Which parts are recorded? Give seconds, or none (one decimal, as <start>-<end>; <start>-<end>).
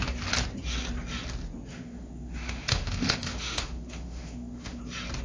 0.0-1.7; 4.8-5.2